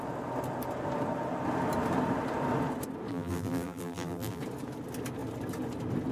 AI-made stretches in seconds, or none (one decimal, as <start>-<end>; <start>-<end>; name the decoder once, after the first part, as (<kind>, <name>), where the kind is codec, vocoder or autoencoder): 3.1-4.4 (vocoder, BigVGAN v2)